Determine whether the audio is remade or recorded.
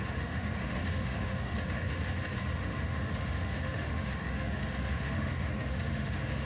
remade